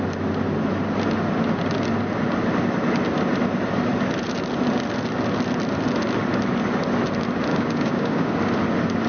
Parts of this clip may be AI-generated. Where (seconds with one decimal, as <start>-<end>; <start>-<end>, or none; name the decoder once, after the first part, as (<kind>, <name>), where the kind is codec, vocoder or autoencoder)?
7.5-8.3 (codec, DAC)

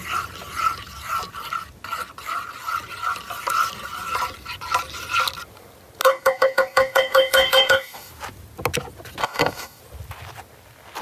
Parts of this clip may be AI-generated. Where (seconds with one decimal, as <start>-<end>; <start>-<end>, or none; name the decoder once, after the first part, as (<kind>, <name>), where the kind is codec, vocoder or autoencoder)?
6.0-8.1 (codec, DAC); 9.2-9.8

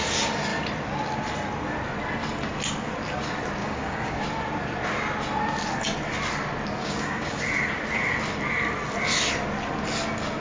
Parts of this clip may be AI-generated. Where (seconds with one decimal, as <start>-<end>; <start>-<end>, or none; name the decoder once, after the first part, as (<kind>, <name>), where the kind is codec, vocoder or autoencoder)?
3.6-4.2 (codec, DAC); 6.8-7.4

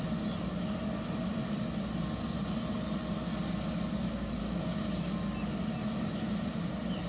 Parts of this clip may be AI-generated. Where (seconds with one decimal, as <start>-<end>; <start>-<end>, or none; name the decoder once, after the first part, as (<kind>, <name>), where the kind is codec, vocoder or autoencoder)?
4.4-5.0 (codec, DAC)

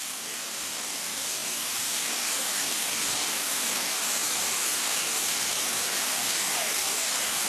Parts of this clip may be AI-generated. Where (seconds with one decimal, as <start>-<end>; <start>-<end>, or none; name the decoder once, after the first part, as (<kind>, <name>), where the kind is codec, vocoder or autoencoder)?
0.0-7.5 (codec, DAC)

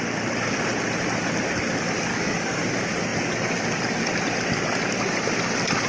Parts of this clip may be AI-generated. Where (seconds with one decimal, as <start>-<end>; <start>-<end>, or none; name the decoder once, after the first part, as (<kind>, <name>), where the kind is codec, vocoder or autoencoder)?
2.1-2.6 (codec, DAC)